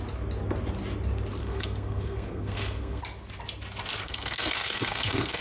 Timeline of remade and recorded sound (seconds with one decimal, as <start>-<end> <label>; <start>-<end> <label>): 0.0-1.4 recorded; 1.4-3.0 remade; 3.0-4.0 recorded; 4.0-5.4 remade